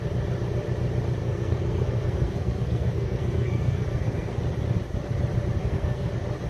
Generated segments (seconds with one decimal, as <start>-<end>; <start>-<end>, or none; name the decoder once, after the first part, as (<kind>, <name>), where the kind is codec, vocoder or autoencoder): 1.2-4.4 (codec, SNAC); 5.6-6.1